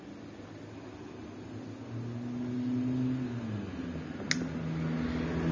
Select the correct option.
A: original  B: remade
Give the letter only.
A